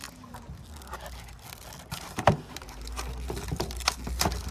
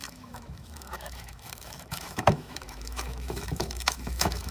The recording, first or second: first